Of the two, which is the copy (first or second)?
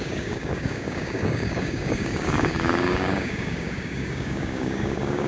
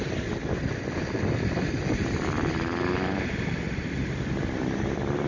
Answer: first